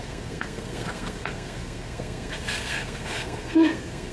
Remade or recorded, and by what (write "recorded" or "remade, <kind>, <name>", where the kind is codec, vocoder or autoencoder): remade, codec, SNAC